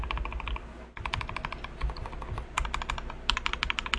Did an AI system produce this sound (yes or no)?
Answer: no